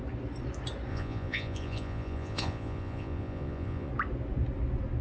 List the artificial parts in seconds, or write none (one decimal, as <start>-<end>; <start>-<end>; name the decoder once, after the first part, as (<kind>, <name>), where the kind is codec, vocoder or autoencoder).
0.9-3.9 (vocoder, Vocos)